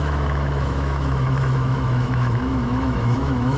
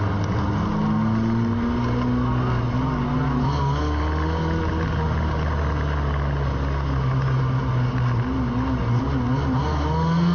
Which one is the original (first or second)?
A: second